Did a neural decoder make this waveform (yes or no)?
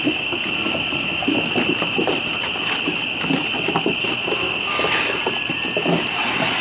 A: no